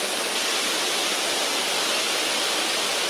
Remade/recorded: recorded